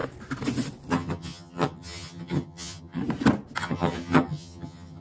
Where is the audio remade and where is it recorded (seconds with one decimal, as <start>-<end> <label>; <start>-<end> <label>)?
0.0-0.9 recorded; 0.9-3.0 remade; 3.0-3.6 recorded; 3.6-5.0 remade